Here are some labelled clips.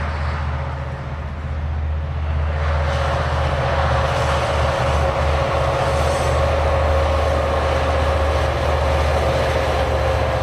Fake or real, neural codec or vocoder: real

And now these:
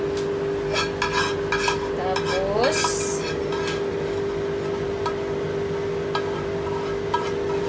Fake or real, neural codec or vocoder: real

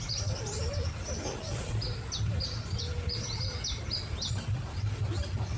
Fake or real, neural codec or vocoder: real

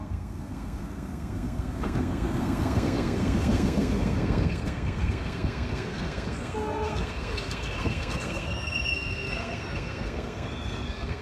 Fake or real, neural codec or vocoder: fake, codec, SNAC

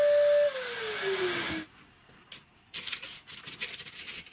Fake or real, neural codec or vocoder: real